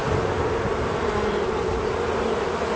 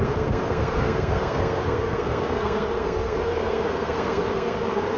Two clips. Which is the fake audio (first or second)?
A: second